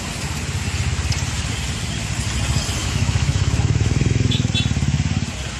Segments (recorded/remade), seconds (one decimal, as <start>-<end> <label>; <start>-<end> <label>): 0.0-2.8 recorded; 2.8-4.5 remade; 4.5-5.6 recorded